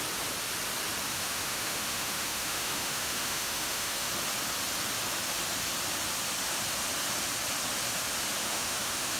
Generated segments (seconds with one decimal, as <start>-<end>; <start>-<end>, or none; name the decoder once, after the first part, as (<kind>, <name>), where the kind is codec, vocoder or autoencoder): 1.1-4.1 (autoencoder, DAC-VAE); 8.4-9.2